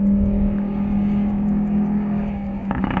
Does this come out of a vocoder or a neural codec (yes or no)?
yes